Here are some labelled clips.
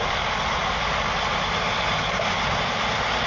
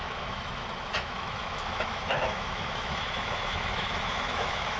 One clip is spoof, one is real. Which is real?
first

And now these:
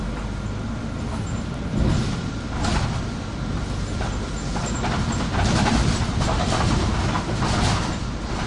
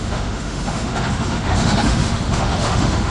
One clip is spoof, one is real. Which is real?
first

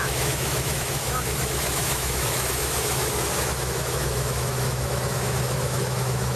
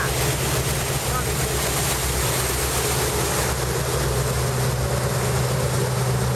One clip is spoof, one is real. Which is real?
second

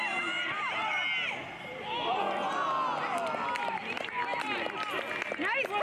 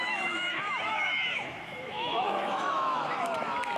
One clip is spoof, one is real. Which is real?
first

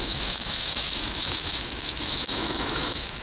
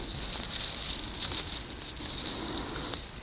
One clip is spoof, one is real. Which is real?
second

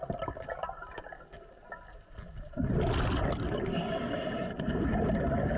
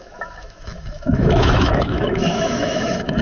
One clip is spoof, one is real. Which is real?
first